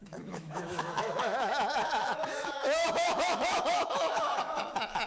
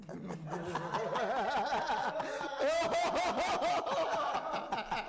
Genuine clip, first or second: second